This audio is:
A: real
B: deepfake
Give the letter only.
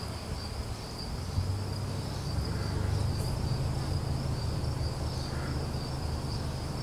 A